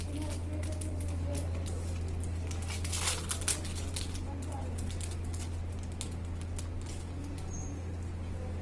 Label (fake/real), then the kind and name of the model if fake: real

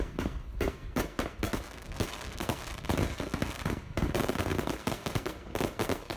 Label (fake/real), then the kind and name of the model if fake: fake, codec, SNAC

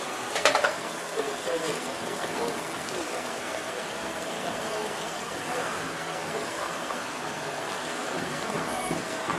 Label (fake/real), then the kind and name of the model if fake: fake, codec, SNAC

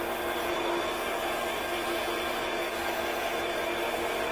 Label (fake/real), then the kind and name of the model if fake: real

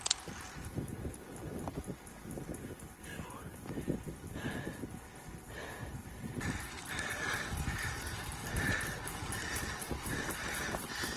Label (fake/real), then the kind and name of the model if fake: real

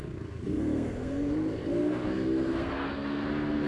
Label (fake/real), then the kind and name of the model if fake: fake, codec, SNAC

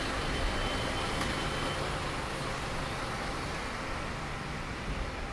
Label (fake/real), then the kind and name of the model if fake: real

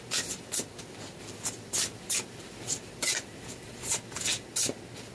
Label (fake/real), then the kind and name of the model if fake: real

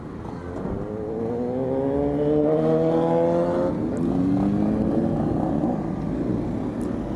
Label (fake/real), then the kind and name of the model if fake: real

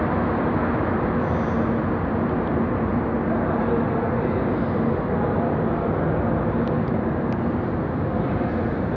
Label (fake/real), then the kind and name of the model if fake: real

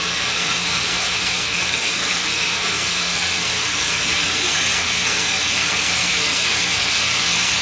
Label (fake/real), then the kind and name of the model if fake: fake, codec, SNAC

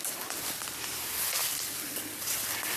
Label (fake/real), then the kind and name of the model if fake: real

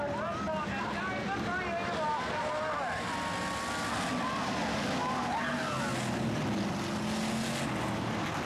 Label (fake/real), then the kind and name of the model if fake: real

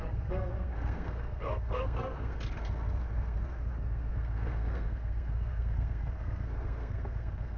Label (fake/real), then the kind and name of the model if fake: fake, codec, SNAC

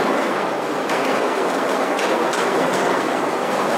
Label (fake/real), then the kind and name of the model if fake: fake, codec, SNAC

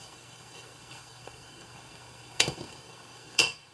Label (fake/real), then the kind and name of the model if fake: fake, codec, SNAC